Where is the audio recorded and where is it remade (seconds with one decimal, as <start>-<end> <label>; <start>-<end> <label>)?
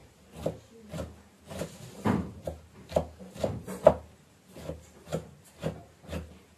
0.0-6.6 recorded